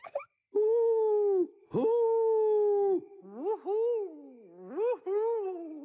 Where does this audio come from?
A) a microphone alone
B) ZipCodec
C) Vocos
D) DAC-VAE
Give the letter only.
A